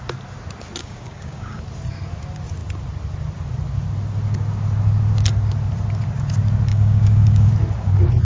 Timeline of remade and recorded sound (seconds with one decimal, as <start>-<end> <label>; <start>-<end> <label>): 0.0-0.8 recorded; 0.8-1.6 remade; 1.6-6.7 recorded; 6.7-7.5 remade; 7.5-8.2 recorded

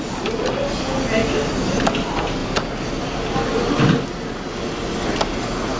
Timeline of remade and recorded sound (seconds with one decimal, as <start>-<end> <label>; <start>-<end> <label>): 0.0-1.2 recorded; 1.2-1.9 remade; 1.9-5.8 recorded